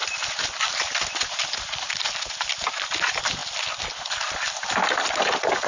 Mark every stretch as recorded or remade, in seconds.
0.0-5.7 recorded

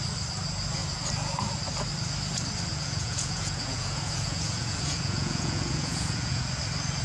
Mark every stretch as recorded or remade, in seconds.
0.0-2.7 recorded; 2.7-6.5 remade; 6.5-7.0 recorded